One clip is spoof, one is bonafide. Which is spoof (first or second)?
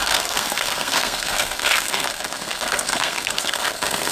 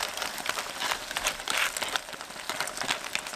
first